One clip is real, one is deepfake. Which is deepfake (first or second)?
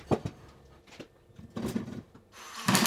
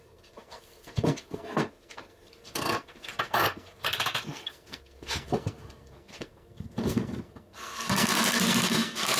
second